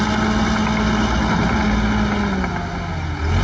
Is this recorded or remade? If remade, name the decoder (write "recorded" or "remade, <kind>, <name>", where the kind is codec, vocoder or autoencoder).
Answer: recorded